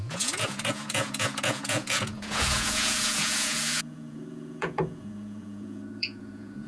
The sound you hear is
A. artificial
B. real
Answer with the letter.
A